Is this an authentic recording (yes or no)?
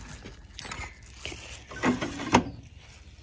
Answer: yes